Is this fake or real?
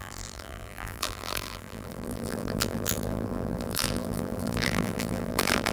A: fake